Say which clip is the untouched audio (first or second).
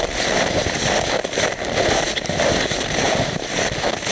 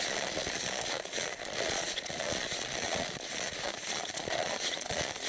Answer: first